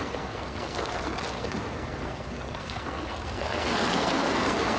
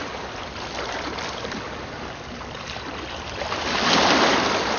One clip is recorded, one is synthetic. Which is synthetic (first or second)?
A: first